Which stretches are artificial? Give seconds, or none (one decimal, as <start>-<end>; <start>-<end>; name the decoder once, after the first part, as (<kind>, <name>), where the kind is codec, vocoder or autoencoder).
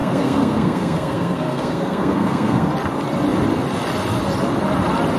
0.0-2.7 (codec, SNAC)